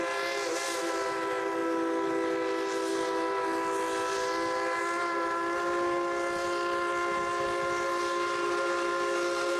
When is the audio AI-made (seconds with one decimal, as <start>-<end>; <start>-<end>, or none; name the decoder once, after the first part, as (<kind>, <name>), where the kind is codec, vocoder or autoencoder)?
none